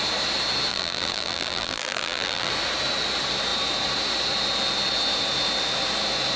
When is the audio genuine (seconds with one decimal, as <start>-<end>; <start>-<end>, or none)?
0.0-0.7; 2.5-6.4